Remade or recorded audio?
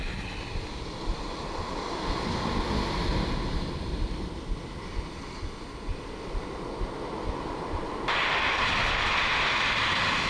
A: recorded